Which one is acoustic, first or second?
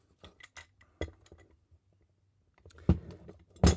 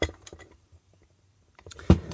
first